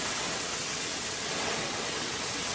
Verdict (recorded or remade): remade